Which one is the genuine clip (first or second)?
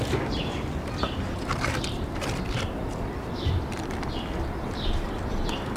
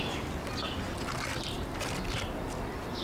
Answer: second